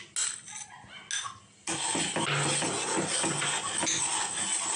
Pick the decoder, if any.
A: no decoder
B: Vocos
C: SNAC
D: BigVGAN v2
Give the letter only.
A